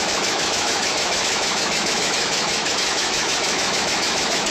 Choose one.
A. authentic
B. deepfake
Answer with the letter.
B